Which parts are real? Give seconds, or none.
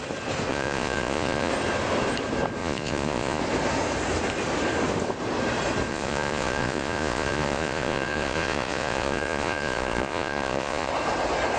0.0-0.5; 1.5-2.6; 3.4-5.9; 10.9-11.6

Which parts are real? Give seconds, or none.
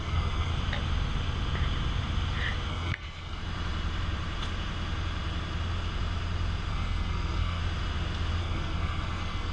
0.5-2.7; 3.4-6.7; 7.6-8.4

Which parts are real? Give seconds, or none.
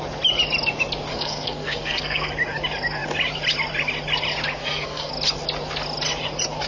0.0-1.1; 2.3-4.6; 5.1-6.7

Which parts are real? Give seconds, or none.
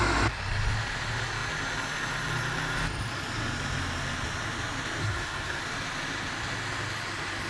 0.0-5.0; 5.6-7.5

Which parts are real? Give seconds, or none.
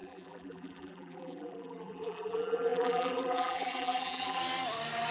4.4-5.1